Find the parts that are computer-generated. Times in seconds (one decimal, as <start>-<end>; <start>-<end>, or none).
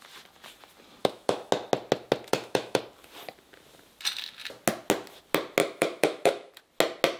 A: 1.0-1.5; 2.3-2.8; 5.6-6.5